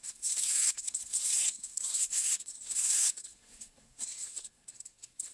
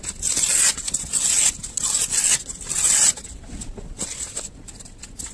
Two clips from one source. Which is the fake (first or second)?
first